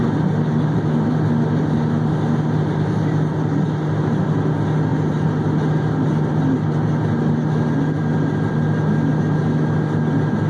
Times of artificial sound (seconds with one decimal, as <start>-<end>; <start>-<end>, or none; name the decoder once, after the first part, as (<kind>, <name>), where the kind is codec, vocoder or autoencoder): none